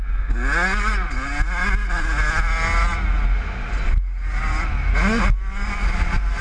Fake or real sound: real